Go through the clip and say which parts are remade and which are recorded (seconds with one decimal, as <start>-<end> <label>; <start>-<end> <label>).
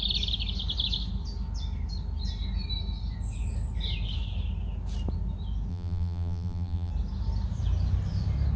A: 0.0-5.7 recorded; 5.7-6.9 remade; 6.9-8.6 recorded